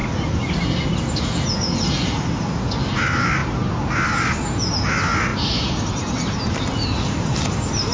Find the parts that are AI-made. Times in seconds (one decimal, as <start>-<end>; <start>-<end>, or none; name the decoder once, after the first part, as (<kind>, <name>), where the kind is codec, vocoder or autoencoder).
none